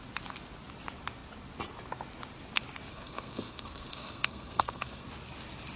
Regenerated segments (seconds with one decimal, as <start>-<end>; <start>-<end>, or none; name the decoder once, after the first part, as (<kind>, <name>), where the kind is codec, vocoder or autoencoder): 2.9-5.1 (codec, SNAC)